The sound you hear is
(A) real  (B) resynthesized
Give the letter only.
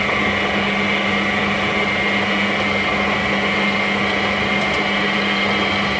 A